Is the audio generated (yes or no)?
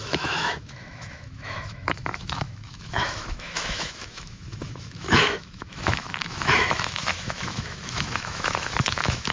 yes